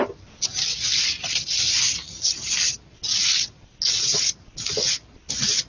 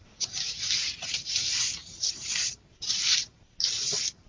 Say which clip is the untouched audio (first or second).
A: first